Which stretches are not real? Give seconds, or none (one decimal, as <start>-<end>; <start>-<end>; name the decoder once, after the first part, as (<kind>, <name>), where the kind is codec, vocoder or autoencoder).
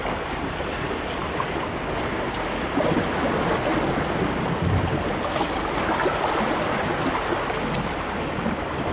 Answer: none